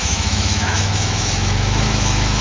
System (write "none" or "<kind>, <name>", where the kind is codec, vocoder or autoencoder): autoencoder, DAC-VAE